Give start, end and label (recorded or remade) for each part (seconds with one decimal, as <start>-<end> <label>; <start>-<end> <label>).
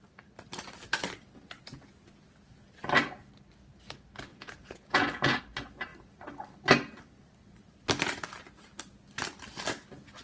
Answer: 0.0-4.3 recorded; 4.3-5.4 remade; 5.4-10.2 recorded